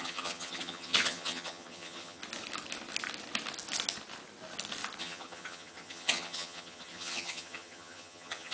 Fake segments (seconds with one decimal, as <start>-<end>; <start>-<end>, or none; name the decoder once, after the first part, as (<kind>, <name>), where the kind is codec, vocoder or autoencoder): 0.0-2.2 (vocoder, HiFi-GAN); 5.0-8.5